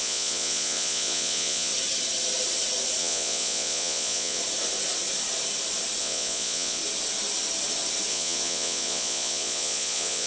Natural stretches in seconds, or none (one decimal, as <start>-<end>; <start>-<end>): 1.7-3.0; 4.4-6.0; 6.8-8.1